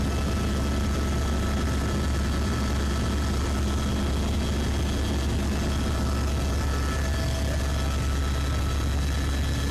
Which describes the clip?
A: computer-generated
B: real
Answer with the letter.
B